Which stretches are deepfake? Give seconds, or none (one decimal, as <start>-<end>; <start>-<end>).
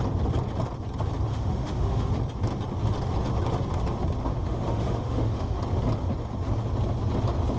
1.3-2.1; 4.3-5.6